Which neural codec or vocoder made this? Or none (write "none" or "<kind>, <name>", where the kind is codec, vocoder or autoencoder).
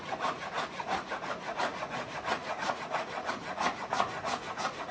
vocoder, Vocos